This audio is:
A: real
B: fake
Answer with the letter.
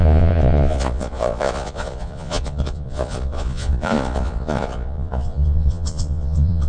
B